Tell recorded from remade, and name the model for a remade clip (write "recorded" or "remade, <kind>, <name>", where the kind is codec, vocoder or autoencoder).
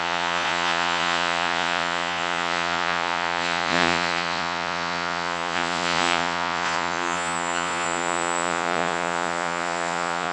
remade, vocoder, Vocos